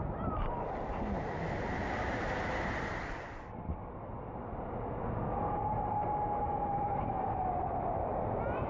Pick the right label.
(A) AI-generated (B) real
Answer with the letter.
B